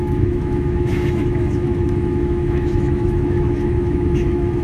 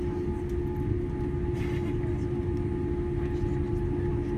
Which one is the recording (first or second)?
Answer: second